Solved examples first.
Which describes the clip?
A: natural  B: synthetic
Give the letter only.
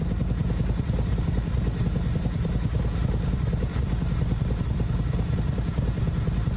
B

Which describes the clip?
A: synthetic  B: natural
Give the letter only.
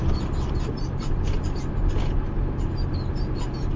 B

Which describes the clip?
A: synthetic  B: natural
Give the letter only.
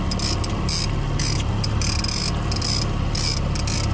B